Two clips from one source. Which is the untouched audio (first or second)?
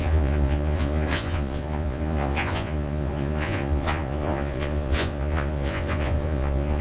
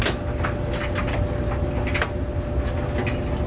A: second